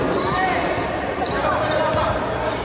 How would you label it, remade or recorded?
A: recorded